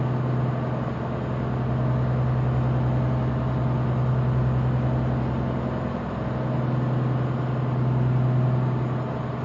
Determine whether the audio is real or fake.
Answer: real